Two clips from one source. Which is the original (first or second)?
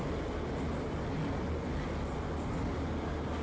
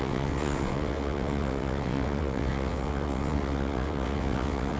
first